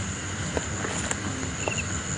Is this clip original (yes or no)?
yes